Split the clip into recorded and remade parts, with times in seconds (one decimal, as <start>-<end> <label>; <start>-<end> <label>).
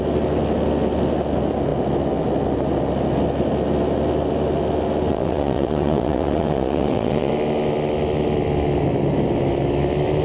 0.0-5.1 recorded; 5.1-7.3 remade; 7.3-10.2 recorded